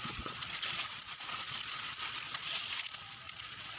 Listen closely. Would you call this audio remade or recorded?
remade